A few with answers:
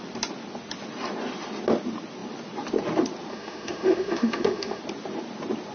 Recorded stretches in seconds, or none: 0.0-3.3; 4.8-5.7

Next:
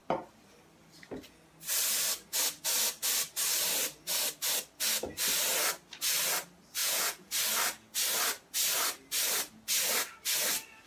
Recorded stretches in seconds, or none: 0.0-6.8; 7.3-10.9

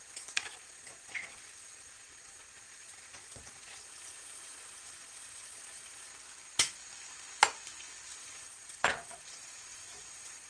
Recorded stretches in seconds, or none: 6.1-8.2

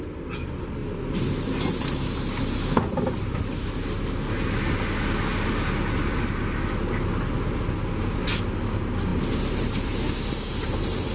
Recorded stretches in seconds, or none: 0.0-11.1

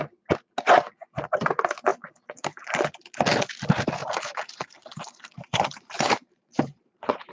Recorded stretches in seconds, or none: 0.0-1.9; 2.8-4.0

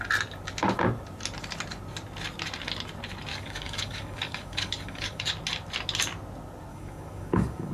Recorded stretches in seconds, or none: 0.0-3.3; 5.3-6.7

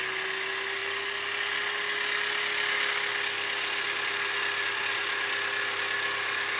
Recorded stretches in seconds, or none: 0.0-6.6